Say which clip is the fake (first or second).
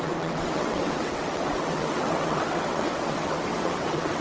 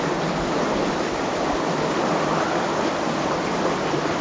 first